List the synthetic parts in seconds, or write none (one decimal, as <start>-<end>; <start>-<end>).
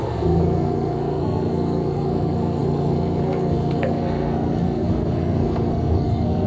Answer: 0.0-6.5